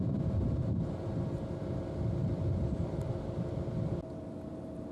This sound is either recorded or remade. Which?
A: recorded